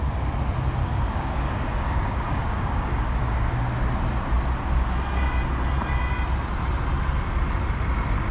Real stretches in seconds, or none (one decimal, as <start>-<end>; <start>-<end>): 0.0-0.8; 3.5-8.3